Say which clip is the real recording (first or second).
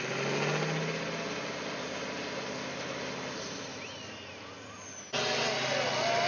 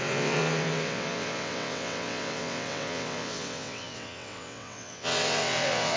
first